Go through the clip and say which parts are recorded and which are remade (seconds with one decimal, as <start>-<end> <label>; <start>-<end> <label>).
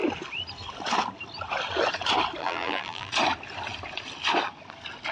0.0-2.4 recorded; 2.4-3.1 remade; 3.1-5.1 recorded